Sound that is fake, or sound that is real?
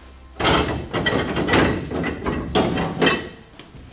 real